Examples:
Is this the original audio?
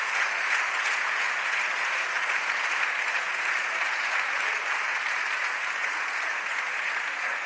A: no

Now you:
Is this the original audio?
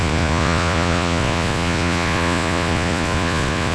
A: no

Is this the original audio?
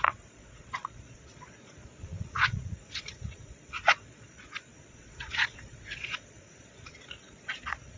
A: no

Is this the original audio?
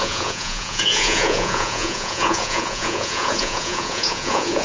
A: no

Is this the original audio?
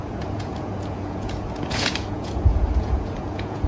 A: no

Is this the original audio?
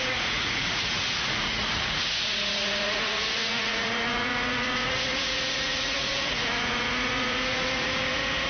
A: no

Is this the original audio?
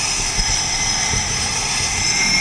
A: yes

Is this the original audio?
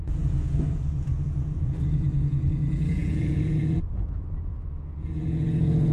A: no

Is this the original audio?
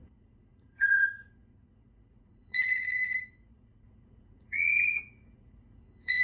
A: no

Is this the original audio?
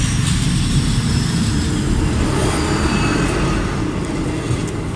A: yes